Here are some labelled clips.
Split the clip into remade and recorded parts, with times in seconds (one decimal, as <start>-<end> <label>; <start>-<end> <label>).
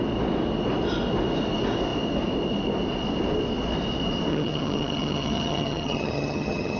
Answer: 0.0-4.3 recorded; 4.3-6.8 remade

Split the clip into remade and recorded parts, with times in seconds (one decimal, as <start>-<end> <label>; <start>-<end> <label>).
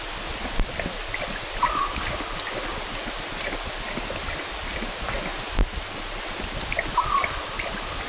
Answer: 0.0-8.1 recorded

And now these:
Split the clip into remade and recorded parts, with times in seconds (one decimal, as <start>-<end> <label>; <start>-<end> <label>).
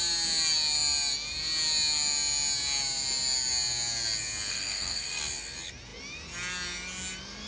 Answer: 0.0-4.5 recorded; 4.5-5.2 remade; 5.2-7.5 recorded